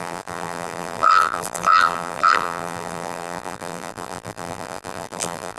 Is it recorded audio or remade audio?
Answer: remade